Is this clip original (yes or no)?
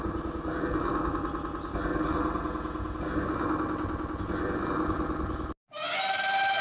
yes